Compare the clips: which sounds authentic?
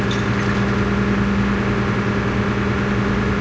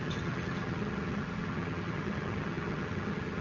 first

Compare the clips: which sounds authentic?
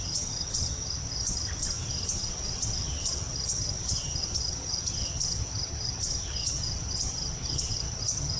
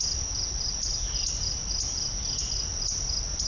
second